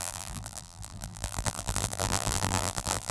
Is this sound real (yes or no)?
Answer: no